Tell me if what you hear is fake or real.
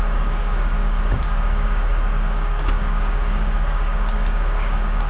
fake